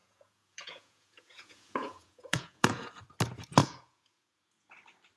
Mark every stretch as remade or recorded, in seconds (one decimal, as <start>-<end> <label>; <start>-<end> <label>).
0.0-2.9 remade; 2.9-3.6 recorded; 3.6-4.7 remade; 4.7-5.2 recorded

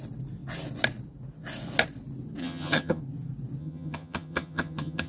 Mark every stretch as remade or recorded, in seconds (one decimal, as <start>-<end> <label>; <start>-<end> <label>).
0.0-2.4 recorded; 2.4-3.0 remade; 3.0-3.6 recorded; 3.6-5.1 remade